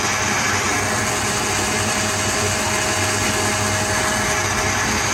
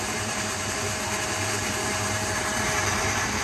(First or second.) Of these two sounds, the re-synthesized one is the second